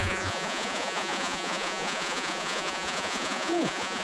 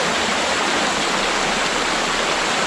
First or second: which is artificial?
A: first